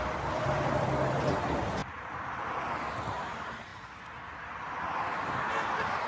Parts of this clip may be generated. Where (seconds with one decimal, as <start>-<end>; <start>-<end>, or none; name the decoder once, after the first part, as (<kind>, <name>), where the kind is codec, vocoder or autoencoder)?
0.0-6.1 (vocoder, BigVGAN v2)